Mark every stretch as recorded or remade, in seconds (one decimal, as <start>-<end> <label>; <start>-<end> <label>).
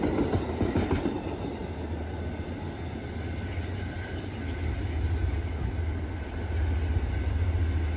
0.0-8.0 recorded